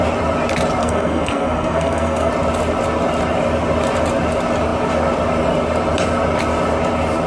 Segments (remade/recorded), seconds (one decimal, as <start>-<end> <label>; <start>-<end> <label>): 0.0-0.8 recorded; 0.8-2.3 remade; 2.3-7.3 recorded

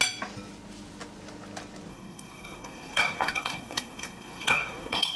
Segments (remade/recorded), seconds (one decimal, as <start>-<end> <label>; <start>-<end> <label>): 0.0-1.9 recorded; 1.9-5.2 remade

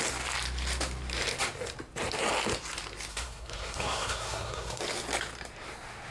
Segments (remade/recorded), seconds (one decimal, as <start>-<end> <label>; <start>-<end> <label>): 0.0-3.1 recorded; 3.1-4.8 remade; 4.8-6.1 recorded

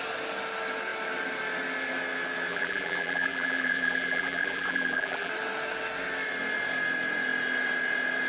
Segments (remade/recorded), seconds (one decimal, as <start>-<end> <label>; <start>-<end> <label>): 0.0-2.5 recorded; 2.5-5.3 remade; 5.3-8.3 recorded

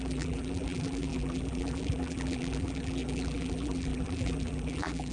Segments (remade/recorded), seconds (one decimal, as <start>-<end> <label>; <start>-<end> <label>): 0.0-5.1 remade

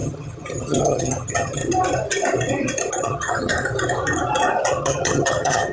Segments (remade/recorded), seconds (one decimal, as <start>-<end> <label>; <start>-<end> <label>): 0.0-1.6 remade; 1.6-2.9 recorded; 2.9-3.5 remade; 3.5-4.7 recorded; 4.7-5.7 remade

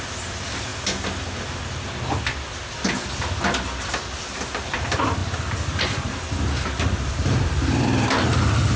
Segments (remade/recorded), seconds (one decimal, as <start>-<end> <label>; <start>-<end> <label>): 0.0-0.7 remade; 0.7-4.0 recorded; 4.0-8.8 remade